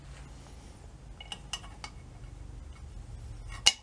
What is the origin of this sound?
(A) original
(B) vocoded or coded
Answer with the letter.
A